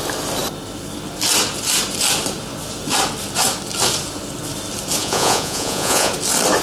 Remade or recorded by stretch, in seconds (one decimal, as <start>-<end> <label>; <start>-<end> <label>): 0.0-5.0 recorded; 5.0-6.1 remade; 6.1-6.6 recorded

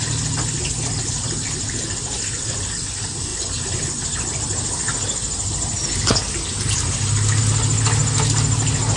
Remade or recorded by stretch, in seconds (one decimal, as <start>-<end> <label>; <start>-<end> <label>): 0.0-9.0 recorded

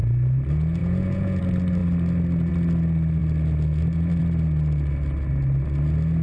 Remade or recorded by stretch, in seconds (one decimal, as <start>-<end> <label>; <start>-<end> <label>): 0.0-0.8 recorded; 0.8-1.4 remade; 1.4-6.2 recorded